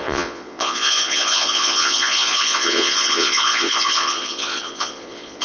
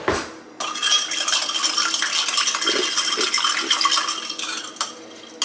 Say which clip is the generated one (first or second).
first